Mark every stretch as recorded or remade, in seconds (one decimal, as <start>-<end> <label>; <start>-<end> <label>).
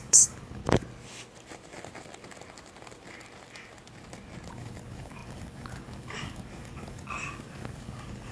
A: 0.0-0.6 remade; 0.6-4.5 recorded; 4.5-8.3 remade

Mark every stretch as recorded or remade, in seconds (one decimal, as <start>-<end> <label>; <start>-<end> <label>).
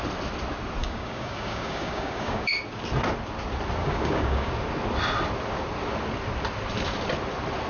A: 0.0-0.8 recorded; 0.8-2.5 remade; 2.5-3.8 recorded; 3.8-4.5 remade; 4.5-7.7 recorded